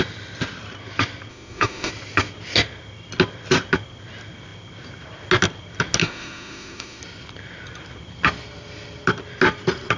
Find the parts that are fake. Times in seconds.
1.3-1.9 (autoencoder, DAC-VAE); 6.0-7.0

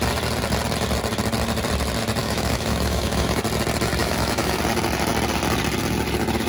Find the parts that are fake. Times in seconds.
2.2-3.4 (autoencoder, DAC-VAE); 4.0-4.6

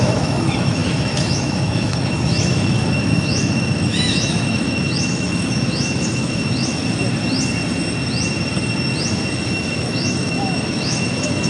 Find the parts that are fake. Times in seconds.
0.0-6.8 (autoencoder, DAC-VAE); 9.3-11.5

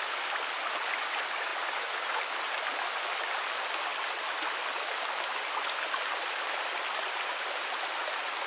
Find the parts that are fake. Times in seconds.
none